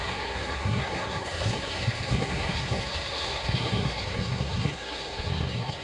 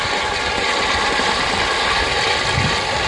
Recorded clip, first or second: second